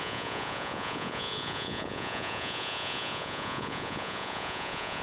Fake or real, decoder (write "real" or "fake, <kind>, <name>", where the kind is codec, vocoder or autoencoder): fake, vocoder, Vocos